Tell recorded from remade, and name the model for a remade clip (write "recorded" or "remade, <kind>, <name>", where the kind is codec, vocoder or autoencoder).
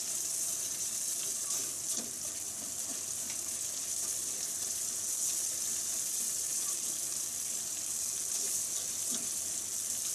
recorded